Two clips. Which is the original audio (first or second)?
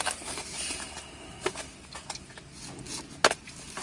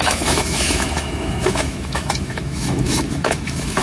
first